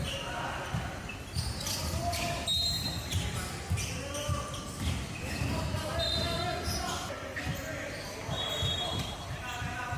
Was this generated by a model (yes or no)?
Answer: no